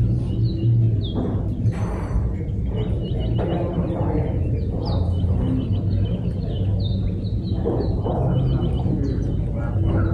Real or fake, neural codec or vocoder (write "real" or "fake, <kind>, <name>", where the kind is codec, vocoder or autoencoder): real